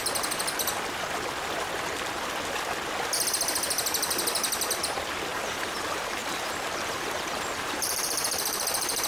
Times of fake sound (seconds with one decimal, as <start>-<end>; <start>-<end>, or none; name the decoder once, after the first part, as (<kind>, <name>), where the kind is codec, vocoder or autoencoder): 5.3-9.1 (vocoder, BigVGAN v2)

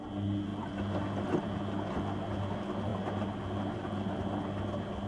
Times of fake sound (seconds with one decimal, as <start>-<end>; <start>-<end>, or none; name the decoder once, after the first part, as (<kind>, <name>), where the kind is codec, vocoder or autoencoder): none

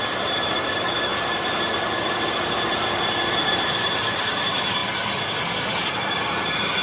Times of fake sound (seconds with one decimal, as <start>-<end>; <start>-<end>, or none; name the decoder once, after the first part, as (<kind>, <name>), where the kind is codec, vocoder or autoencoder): 0.0-1.1 (vocoder, BigVGAN v2); 3.3-4.8; 5.6-6.8